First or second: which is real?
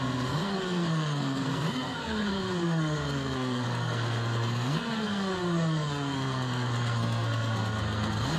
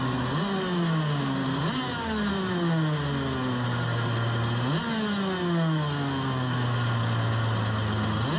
second